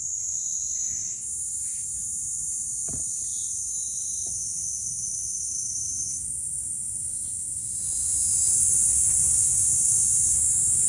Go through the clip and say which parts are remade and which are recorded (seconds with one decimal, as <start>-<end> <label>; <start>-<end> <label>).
0.0-1.0 remade; 1.0-3.7 recorded; 3.7-10.9 remade